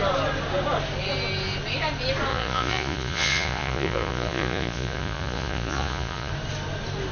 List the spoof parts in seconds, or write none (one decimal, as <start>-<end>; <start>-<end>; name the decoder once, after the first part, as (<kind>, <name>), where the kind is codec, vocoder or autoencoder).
2.3-6.3 (vocoder, Vocos)